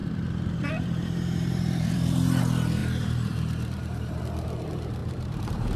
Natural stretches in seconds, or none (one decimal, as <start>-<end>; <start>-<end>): 2.4-2.8; 4.2-5.0